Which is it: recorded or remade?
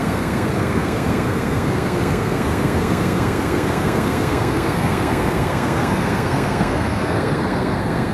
remade